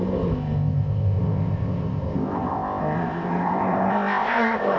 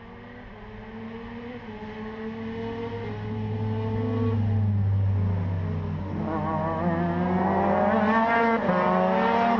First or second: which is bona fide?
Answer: second